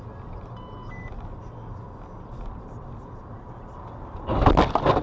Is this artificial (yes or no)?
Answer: no